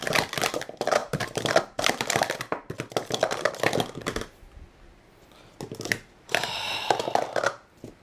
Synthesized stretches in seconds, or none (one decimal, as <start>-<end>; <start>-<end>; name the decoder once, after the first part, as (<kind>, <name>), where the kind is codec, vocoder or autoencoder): 1.0-3.5 (vocoder, BigVGAN v2)